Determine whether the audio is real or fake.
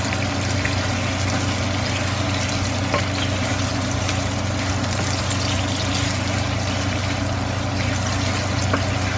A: real